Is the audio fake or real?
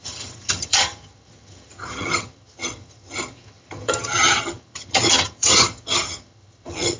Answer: fake